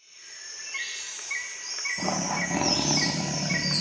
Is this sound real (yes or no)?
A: yes